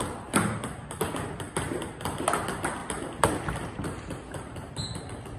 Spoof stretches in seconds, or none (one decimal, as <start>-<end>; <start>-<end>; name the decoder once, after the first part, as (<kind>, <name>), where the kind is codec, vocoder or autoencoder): none